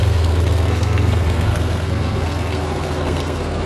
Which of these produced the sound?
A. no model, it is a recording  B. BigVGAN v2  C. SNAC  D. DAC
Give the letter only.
C